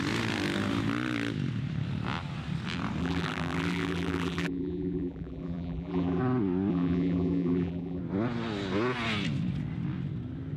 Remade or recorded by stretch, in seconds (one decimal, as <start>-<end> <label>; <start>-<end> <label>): 0.0-3.0 recorded; 3.0-6.2 remade; 6.2-6.7 recorded; 6.7-8.0 remade; 8.0-10.6 recorded